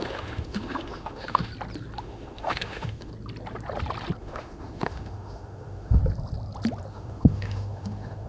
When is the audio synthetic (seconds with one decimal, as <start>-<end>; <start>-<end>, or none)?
0.0-1.5; 2.0-3.1; 4.2-6.0; 6.9-8.3